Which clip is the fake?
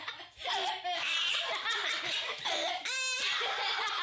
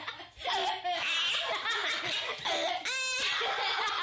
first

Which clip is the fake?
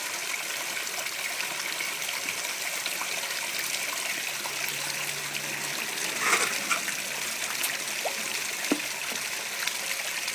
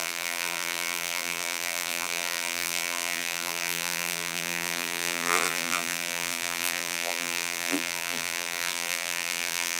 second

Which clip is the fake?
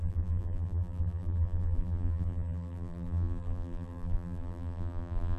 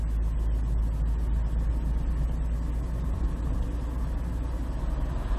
first